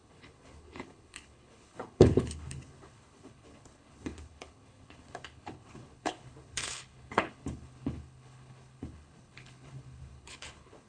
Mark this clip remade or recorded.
remade